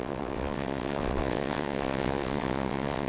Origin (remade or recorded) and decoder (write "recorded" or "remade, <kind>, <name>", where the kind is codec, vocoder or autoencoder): remade, vocoder, WaveNeXt